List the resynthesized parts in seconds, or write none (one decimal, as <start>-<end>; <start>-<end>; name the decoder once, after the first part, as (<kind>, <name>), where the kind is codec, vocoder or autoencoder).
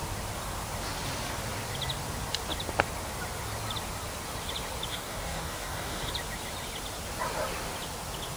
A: 4.9-6.1 (codec, DAC)